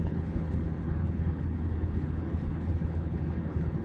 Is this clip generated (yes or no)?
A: yes